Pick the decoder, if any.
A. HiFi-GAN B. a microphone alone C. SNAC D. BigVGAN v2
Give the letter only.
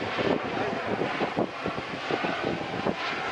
B